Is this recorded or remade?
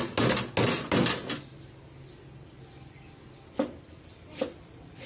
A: recorded